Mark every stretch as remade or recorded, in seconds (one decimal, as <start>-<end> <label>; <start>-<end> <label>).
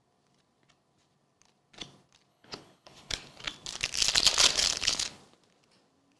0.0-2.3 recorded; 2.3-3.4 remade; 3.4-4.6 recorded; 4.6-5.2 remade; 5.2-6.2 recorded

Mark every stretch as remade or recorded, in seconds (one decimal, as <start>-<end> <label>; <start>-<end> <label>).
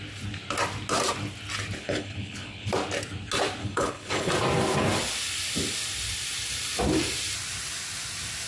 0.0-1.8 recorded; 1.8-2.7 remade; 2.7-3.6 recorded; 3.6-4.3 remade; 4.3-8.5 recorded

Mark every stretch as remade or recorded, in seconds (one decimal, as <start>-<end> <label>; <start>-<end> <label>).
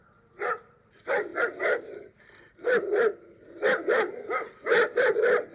0.0-5.5 recorded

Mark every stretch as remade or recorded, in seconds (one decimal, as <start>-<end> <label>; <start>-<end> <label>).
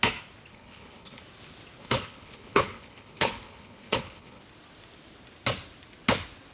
0.0-0.5 recorded; 0.5-1.2 remade; 1.2-1.8 recorded; 1.8-4.4 remade; 4.4-6.5 recorded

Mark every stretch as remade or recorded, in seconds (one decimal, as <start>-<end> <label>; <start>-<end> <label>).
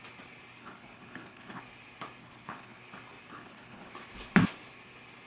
0.0-0.6 recorded; 0.6-1.6 remade; 1.6-2.2 recorded; 2.2-2.8 remade; 2.8-3.3 recorded; 3.3-3.9 remade; 3.9-5.3 recorded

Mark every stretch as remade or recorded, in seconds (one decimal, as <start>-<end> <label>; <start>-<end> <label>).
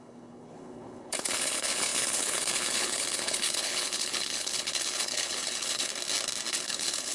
0.0-5.9 remade; 5.9-6.5 recorded; 6.5-7.1 remade